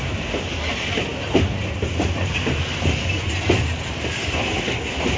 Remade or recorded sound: recorded